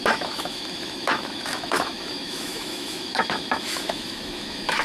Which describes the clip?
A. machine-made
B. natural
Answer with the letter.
A